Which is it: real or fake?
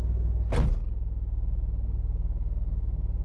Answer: real